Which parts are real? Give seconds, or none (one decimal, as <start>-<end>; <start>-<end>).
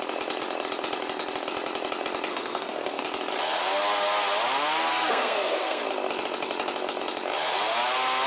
0.0-2.3; 3.0-4.9; 5.8-8.3